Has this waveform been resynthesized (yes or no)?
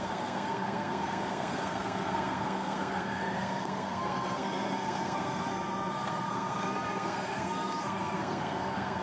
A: yes